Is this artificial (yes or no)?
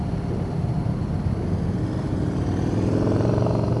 no